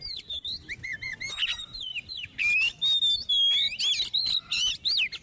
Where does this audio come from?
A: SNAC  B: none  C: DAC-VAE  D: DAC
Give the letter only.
B